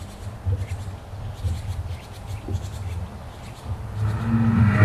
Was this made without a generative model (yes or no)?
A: yes